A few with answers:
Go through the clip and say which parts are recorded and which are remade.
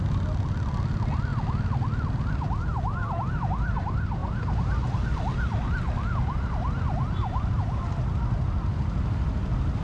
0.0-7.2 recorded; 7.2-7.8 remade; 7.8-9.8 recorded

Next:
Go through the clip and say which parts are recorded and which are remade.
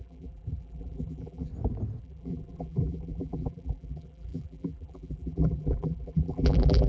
0.0-1.5 remade; 1.5-2.0 recorded; 2.0-6.9 remade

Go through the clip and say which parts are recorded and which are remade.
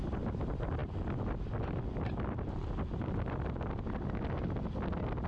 0.0-5.3 recorded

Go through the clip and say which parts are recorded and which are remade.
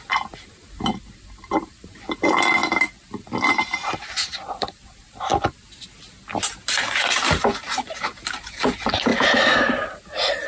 0.0-0.9 remade; 0.9-1.5 recorded; 1.5-2.6 remade; 2.6-3.5 recorded; 3.5-5.3 remade; 5.3-6.4 recorded; 6.4-10.5 remade